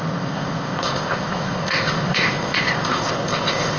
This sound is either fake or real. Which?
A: fake